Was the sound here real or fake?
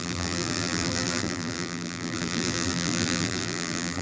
fake